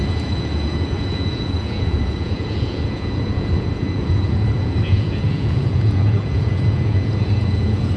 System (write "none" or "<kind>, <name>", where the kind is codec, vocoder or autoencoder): vocoder, Vocos